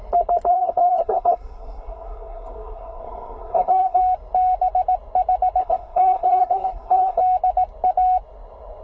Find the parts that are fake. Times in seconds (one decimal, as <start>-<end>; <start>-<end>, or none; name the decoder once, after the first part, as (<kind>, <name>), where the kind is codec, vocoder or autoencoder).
0.5-4.0 (codec, SNAC); 5.6-7.2